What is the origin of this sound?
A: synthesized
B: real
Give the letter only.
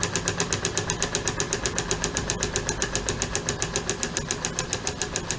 B